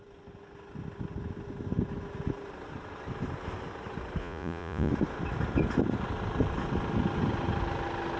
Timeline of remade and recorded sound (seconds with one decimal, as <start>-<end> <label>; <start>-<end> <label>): 0.0-4.2 recorded; 4.2-4.9 remade; 4.9-8.2 recorded